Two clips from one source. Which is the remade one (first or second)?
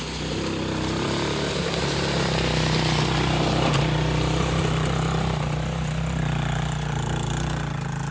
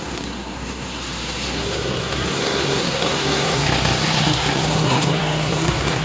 second